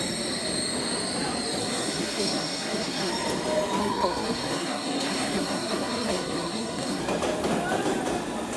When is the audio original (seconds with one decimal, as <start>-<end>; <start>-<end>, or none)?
0.0-1.6; 3.1-3.8; 7.0-8.6